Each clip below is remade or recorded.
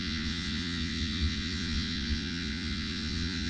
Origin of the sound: remade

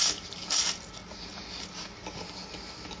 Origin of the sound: recorded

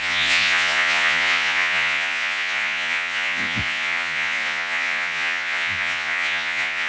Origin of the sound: remade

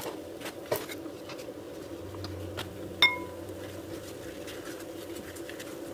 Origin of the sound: recorded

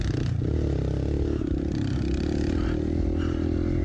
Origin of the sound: recorded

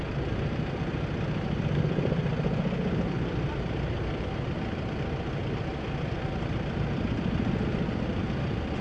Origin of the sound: recorded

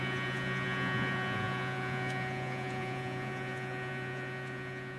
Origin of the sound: remade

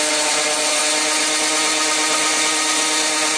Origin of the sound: recorded